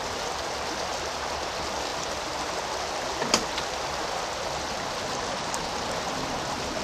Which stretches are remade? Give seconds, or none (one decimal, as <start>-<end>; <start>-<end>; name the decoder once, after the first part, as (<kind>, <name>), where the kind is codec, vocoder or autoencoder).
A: 1.9-4.1 (vocoder, BigVGAN v2)